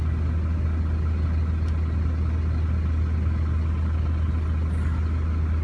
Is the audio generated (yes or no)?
no